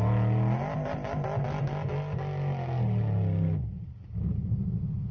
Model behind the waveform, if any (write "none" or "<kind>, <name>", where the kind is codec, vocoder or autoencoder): none